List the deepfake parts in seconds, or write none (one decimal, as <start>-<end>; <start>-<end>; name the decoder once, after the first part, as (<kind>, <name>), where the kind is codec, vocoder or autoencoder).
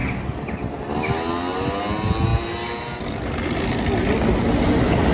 none